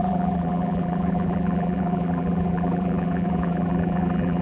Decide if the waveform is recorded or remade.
remade